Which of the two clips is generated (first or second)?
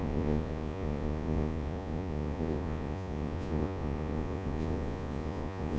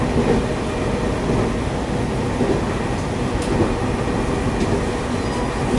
first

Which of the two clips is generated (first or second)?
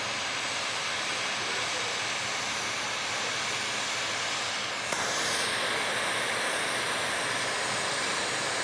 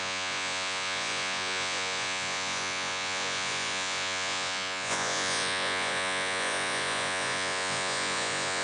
second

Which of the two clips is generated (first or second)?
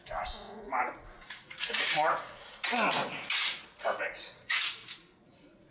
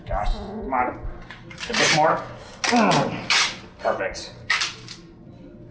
first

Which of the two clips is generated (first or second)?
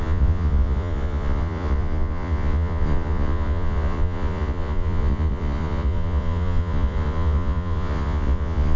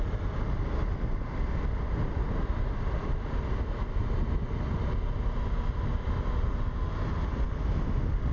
first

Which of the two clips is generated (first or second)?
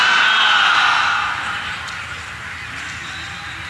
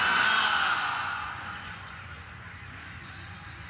second